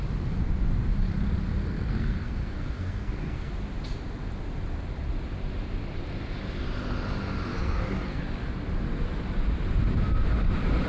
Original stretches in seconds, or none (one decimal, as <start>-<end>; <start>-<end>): 0.0-1.6; 3.5-7.5; 8.2-10.9